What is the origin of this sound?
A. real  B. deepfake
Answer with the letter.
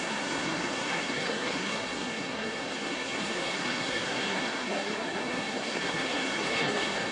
B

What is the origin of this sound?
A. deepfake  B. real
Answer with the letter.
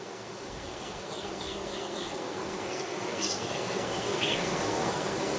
A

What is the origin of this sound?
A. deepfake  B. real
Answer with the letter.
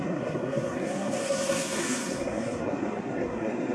A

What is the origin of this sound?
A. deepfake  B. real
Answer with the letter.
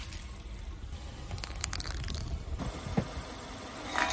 B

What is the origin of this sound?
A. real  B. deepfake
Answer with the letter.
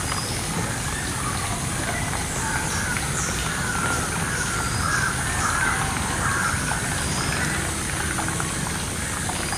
A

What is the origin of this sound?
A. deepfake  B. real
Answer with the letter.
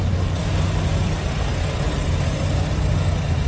B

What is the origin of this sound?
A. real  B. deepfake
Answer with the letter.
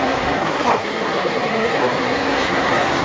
B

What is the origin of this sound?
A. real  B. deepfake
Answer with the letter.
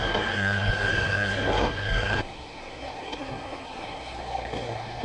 B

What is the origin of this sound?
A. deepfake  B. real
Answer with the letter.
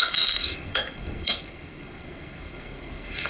A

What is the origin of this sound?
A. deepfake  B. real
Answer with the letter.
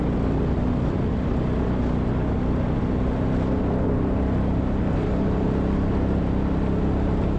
B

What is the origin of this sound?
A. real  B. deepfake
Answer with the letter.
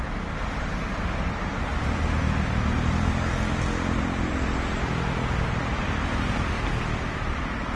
A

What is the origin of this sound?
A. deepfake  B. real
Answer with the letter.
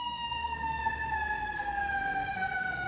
A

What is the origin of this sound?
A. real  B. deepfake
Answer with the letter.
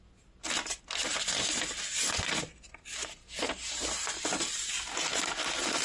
A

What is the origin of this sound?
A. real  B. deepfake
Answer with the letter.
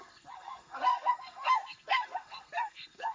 B